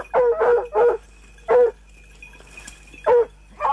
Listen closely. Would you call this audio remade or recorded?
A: recorded